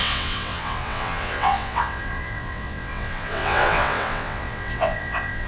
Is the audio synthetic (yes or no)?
yes